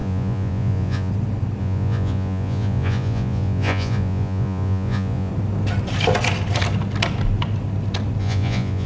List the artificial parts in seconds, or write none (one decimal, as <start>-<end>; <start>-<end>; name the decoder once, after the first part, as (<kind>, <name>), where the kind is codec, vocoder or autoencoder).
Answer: 0.0-1.1 (vocoder, Vocos); 1.6-5.3; 8.2-8.9